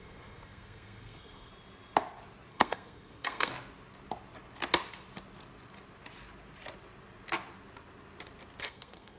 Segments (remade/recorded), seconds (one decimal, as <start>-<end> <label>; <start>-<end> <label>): 0.0-1.5 remade; 1.5-2.5 recorded; 2.5-3.5 remade; 3.5-8.6 recorded; 8.6-9.2 remade